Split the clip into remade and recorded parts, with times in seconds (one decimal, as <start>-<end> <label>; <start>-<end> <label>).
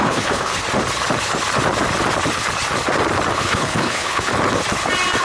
0.0-0.5 remade; 0.5-3.3 recorded; 3.3-4.3 remade; 4.3-5.2 recorded